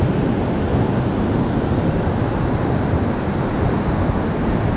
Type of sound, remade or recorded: recorded